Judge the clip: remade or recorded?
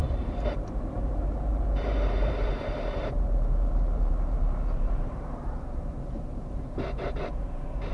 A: remade